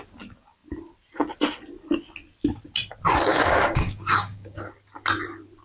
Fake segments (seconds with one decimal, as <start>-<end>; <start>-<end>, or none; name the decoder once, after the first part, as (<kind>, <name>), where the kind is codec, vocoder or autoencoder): 3.3-4.7 (codec, DAC)